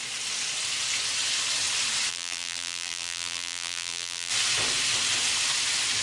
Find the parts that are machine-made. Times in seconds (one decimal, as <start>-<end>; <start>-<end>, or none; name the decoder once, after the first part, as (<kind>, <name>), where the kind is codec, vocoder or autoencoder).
2.1-4.3 (vocoder, BigVGAN v2)